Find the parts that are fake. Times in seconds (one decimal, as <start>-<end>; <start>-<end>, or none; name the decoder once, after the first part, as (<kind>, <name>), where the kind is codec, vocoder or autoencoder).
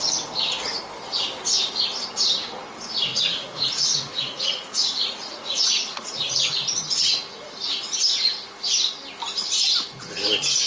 3.1-6.5 (vocoder, Vocos)